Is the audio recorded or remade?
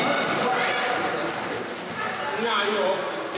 recorded